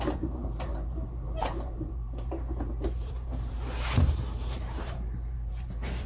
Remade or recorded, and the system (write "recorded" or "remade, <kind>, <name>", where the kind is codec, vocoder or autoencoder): remade, vocoder, BigVGAN v2